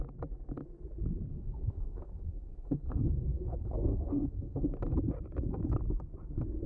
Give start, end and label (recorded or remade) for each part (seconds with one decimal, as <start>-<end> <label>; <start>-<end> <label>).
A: 0.0-1.3 recorded; 1.3-4.7 remade; 4.7-6.7 recorded